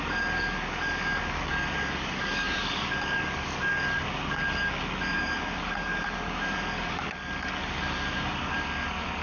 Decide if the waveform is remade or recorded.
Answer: remade